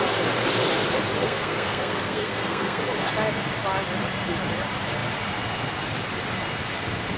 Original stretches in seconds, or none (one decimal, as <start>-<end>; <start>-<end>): 0.0-1.2; 2.8-7.2